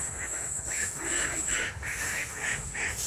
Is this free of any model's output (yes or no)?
no